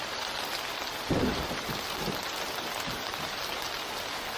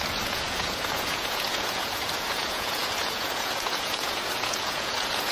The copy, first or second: second